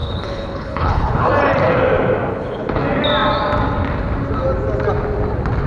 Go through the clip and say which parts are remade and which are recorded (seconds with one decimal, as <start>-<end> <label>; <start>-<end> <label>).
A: 0.0-1.3 remade; 1.3-2.3 recorded; 2.3-2.8 remade; 2.8-5.7 recorded